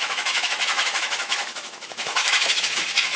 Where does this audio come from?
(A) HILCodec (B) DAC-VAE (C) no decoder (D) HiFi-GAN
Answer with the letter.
B